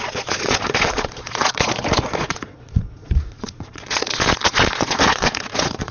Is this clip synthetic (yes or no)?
yes